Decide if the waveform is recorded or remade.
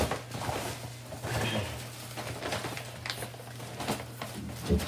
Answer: recorded